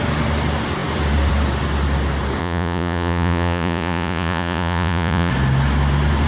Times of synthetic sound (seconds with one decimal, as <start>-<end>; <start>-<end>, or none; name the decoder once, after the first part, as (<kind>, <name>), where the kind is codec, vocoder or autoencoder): 2.4-5.3 (vocoder, Vocos)